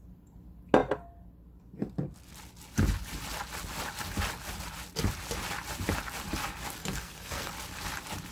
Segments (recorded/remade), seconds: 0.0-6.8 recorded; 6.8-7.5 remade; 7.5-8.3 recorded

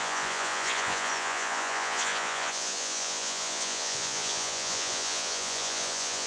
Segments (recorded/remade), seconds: 0.0-6.3 remade

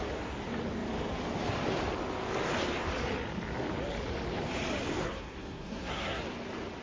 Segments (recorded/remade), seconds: 0.0-5.0 recorded; 5.0-6.2 remade; 6.2-6.8 recorded

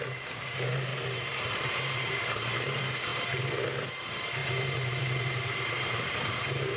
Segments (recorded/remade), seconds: 0.0-6.8 remade

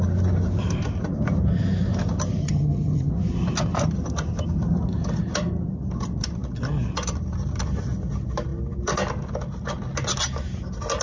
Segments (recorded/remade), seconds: 0.0-2.4 recorded; 2.4-3.1 remade; 3.1-11.0 recorded

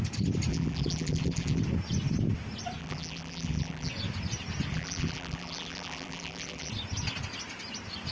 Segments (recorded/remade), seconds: 0.0-0.5 recorded; 0.5-1.6 remade; 1.6-2.8 recorded; 2.8-3.9 remade; 3.9-4.7 recorded; 4.7-6.7 remade; 6.7-8.1 recorded

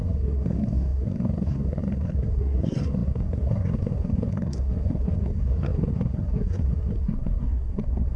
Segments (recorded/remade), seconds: 0.0-8.2 remade